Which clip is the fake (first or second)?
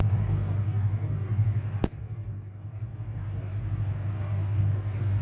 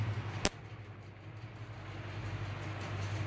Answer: first